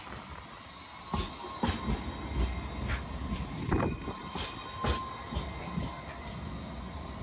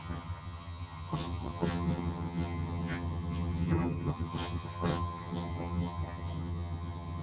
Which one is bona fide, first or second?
first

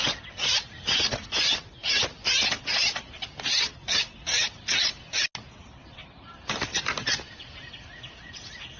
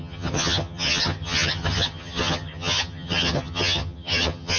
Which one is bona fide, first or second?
first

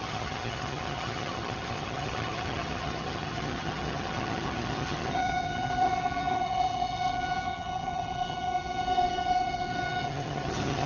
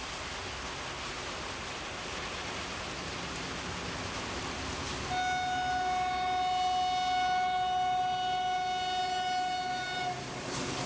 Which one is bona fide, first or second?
second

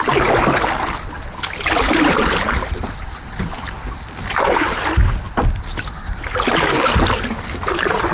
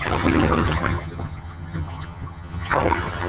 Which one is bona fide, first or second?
first